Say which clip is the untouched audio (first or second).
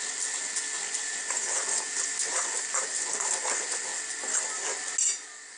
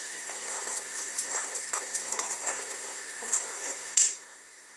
first